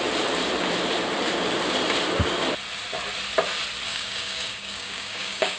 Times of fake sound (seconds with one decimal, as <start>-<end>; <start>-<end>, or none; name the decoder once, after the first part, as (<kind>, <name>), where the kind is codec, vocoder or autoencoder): 3.9-5.6 (codec, DAC)

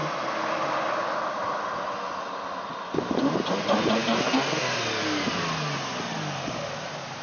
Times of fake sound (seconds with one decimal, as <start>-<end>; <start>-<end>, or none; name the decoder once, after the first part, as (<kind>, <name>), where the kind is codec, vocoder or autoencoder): none

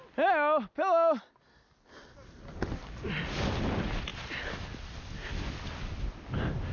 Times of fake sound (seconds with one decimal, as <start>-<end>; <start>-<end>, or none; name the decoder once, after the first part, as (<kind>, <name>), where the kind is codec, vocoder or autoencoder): none